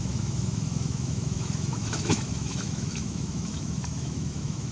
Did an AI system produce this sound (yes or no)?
yes